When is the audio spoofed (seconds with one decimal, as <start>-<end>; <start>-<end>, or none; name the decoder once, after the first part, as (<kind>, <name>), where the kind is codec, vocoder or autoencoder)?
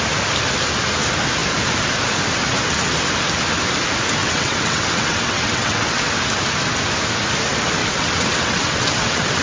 4.2-6.1 (vocoder, WaveNeXt); 7.8-9.4